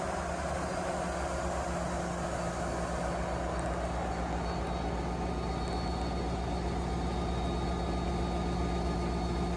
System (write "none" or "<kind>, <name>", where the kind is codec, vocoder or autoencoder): none